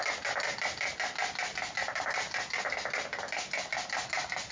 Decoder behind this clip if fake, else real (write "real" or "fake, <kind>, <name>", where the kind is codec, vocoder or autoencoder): real